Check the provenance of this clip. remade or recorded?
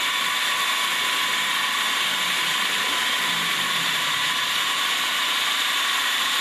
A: remade